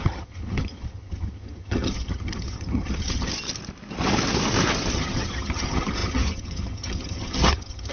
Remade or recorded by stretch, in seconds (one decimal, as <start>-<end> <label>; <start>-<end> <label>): 0.0-3.3 remade; 3.3-4.9 recorded; 4.9-7.9 remade